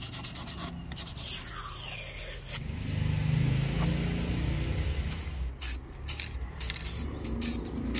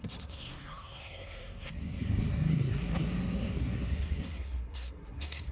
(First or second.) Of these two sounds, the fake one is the second